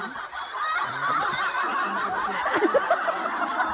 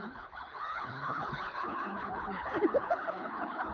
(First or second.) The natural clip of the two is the first